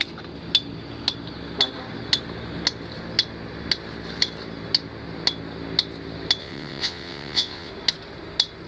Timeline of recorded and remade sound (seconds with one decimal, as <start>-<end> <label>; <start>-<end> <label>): 0.0-6.4 recorded; 6.4-7.7 remade; 7.7-8.7 recorded